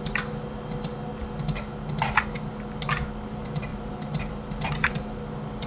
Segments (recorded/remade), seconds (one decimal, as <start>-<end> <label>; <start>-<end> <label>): 0.0-3.7 recorded; 3.7-5.1 remade; 5.1-5.7 recorded